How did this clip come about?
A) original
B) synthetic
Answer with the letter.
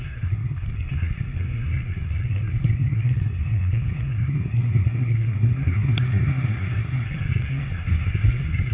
B